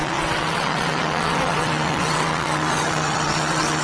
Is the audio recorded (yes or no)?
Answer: no